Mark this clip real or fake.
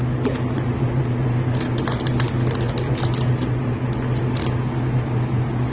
real